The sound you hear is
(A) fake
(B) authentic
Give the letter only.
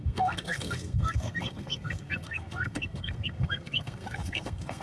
A